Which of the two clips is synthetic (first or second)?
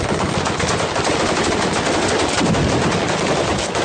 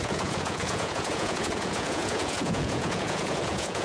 second